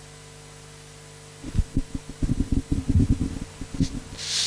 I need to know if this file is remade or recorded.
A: recorded